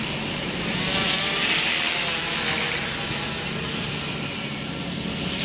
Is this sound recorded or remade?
recorded